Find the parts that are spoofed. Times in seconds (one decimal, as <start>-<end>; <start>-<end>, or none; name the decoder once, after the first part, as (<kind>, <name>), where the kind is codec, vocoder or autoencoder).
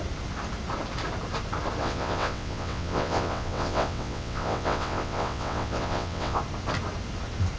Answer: 1.8-6.4 (vocoder, WaveNeXt)